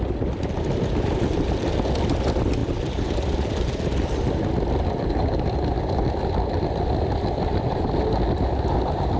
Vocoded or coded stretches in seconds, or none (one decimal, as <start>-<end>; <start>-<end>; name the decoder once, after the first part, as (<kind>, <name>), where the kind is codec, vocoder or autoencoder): none